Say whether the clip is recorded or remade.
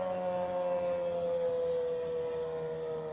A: recorded